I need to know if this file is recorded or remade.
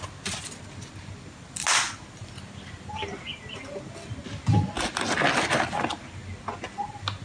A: recorded